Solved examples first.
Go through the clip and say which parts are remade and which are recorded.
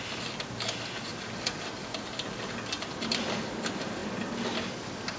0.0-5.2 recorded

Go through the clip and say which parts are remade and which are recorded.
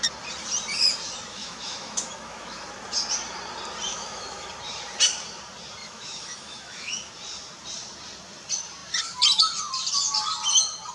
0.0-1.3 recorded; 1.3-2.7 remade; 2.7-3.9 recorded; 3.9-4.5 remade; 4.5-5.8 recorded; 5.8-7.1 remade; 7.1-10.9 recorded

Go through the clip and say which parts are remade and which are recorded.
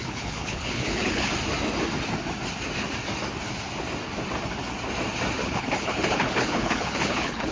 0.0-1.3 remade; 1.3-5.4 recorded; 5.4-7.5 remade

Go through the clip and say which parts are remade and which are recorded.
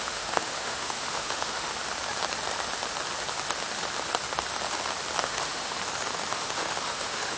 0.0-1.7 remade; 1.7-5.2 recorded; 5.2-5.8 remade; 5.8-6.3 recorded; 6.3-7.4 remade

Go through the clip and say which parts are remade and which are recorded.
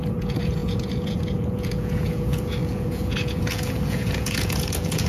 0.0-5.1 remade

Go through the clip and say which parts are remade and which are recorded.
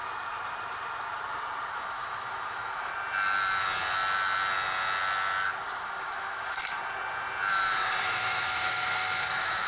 0.0-1.7 recorded; 1.7-2.9 remade; 2.9-5.6 recorded; 5.6-6.8 remade; 6.8-7.5 recorded; 7.5-9.7 remade